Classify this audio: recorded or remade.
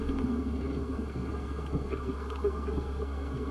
remade